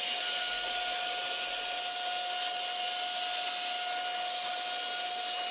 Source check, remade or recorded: recorded